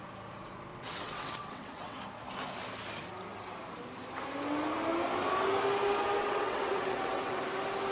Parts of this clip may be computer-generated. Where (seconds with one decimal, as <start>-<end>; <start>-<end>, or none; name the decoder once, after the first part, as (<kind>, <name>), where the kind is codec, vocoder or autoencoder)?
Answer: 0.7-2.0 (vocoder, WaveNeXt); 6.2-7.4